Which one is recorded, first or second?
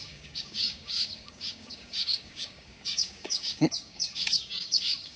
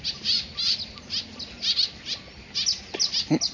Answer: second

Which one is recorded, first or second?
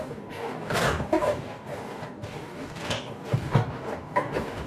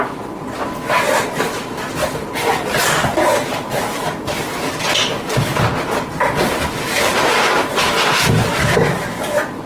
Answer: second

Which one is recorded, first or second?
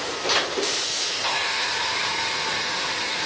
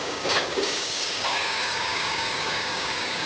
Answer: first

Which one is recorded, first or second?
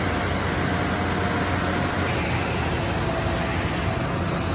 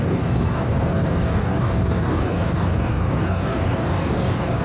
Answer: first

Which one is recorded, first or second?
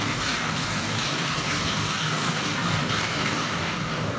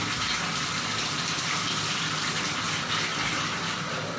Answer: second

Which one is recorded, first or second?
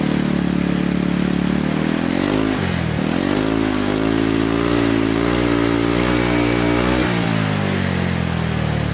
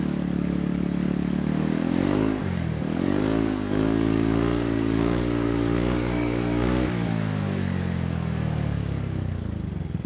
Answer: first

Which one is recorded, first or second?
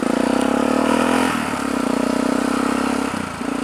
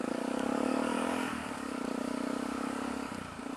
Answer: first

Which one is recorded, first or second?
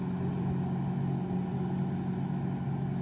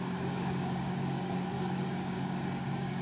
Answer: first